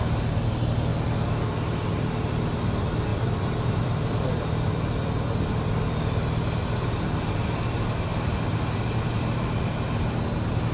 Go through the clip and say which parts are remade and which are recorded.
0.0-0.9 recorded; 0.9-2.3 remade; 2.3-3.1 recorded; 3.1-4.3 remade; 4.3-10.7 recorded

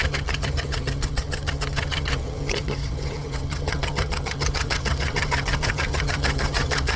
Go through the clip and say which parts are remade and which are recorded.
0.0-7.0 remade

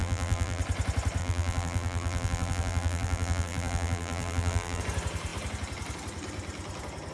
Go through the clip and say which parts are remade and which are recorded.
0.0-0.6 remade; 0.6-1.2 recorded; 1.2-4.8 remade; 4.8-7.1 recorded

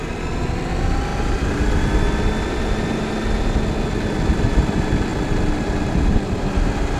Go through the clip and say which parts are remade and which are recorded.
0.0-1.1 recorded; 1.1-2.2 remade; 2.2-5.1 recorded; 5.1-6.4 remade; 6.4-7.0 recorded

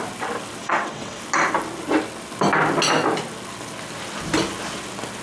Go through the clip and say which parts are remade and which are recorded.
0.0-0.6 recorded; 0.6-1.2 remade; 1.2-5.2 recorded

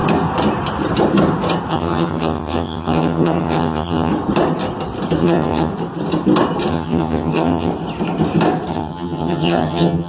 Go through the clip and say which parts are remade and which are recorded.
0.0-1.7 recorded; 1.7-4.1 remade; 4.1-5.2 recorded; 5.2-5.7 remade; 5.7-6.7 recorded; 6.7-7.7 remade; 7.7-8.7 recorded; 8.7-10.1 remade

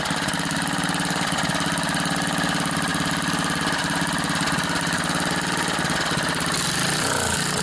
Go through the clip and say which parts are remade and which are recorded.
0.0-7.6 recorded

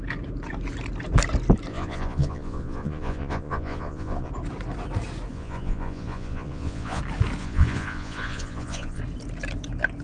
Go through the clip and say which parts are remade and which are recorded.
0.0-1.7 recorded; 1.7-4.3 remade; 4.3-5.3 recorded; 5.3-7.0 remade; 7.0-7.4 recorded; 7.4-9.0 remade; 9.0-10.0 recorded